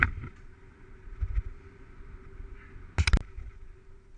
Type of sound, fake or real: real